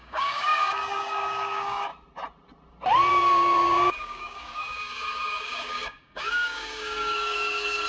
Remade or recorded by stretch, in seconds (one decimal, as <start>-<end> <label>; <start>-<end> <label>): 0.0-1.9 remade; 1.9-3.1 recorded; 3.1-7.9 remade